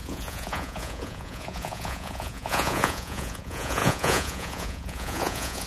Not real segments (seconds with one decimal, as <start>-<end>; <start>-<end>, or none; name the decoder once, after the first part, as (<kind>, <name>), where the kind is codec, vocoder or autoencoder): 0.0-5.7 (vocoder, Vocos)